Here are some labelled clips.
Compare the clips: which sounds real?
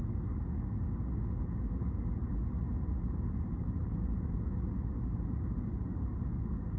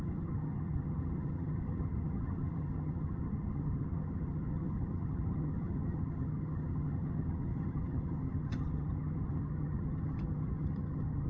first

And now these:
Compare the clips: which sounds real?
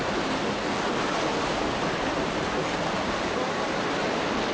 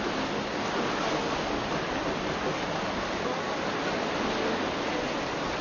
second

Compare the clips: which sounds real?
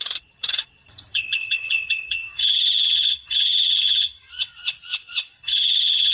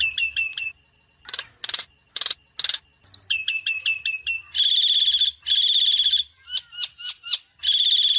second